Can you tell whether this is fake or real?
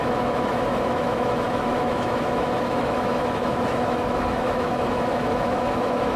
fake